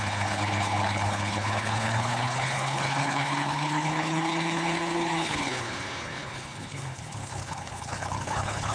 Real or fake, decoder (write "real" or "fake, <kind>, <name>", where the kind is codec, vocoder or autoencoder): fake, codec, HILCodec